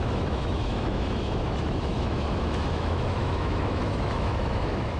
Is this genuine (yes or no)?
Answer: no